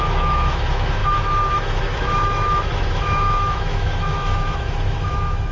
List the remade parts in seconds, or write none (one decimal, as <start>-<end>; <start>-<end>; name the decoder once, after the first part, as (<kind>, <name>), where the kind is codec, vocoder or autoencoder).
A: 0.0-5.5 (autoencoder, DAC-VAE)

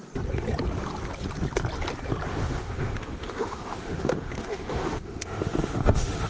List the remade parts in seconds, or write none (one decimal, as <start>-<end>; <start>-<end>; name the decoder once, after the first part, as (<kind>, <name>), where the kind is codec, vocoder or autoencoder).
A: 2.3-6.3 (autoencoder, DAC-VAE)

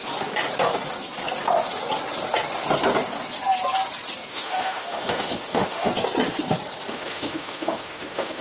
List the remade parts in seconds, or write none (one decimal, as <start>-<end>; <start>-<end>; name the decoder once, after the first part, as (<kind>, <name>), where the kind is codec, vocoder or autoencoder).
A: 4.3-5.9 (autoencoder, DAC-VAE); 6.9-8.4

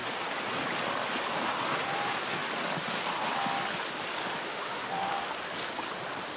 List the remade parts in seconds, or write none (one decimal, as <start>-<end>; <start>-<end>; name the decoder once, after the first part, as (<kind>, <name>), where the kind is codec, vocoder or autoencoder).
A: 4.4-5.1 (autoencoder, DAC-VAE)